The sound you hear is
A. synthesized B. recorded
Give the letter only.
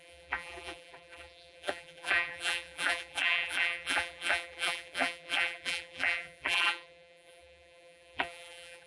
A